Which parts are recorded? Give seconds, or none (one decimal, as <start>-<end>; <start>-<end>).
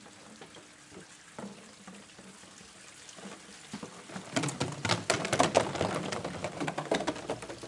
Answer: 0.0-6.4; 7.1-7.7